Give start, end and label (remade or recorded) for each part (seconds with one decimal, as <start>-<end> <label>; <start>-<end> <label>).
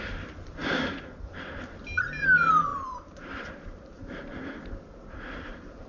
0.0-0.6 recorded; 0.6-1.5 remade; 1.5-2.7 recorded; 2.7-3.5 remade; 3.5-5.9 recorded